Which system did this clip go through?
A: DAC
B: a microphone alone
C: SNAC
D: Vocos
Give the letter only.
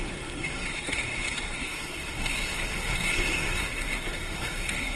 C